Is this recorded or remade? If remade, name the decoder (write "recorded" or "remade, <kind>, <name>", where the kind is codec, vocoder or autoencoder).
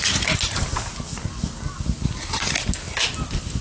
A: recorded